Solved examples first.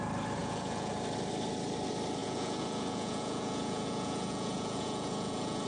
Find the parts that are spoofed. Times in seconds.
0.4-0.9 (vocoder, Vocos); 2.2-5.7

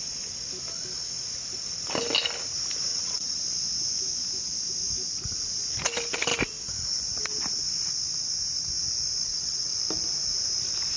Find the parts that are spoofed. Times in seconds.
2.9-3.4 (vocoder, WaveNeXt); 9.3-9.8

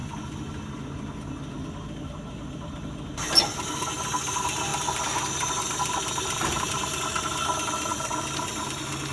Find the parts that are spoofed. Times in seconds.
none

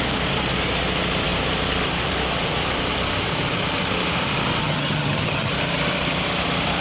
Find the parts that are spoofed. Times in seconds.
4.6-5.5 (vocoder, HiFi-GAN)

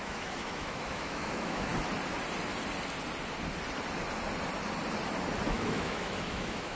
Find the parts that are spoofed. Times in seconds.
0.0-1.7 (autoencoder, DAC-VAE); 5.5-6.8

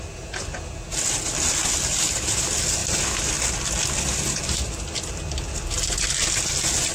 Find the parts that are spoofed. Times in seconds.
2.8-6.9 (vocoder, BigVGAN v2)

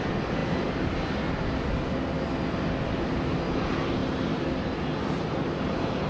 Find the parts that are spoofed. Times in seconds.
none